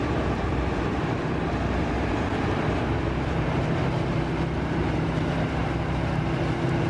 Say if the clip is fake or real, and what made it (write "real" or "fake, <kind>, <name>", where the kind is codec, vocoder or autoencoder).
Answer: fake, vocoder, BigVGAN v2